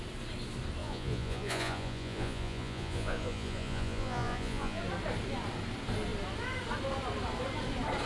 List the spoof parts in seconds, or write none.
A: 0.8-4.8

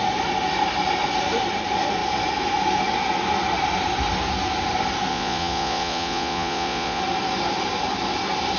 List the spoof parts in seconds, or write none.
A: 5.1-7.0

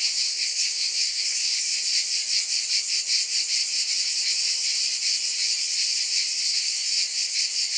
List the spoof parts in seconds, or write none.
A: 0.0-1.7; 6.4-6.9

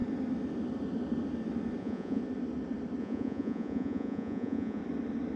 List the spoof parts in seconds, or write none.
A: 1.8-2.2; 3.0-4.8

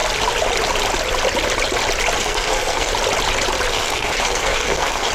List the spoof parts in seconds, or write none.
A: 2.2-2.9; 3.7-5.1

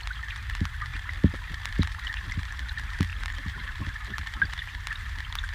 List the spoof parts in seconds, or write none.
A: 3.1-3.8

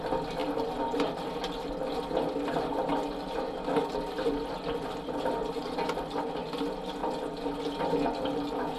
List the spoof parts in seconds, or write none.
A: none